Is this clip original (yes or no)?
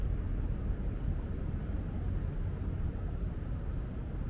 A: yes